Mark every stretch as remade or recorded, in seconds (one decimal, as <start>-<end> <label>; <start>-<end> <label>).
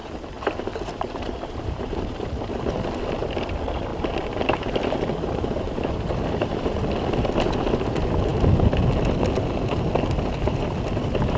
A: 0.0-2.6 remade; 2.6-3.9 recorded; 3.9-6.8 remade; 6.8-11.4 recorded